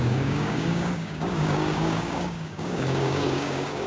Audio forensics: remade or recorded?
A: remade